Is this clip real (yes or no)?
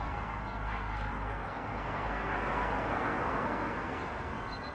no